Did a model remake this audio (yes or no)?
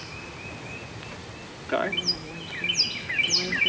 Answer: no